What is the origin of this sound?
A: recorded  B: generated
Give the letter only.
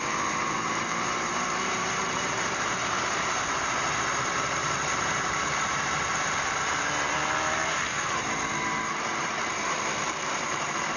B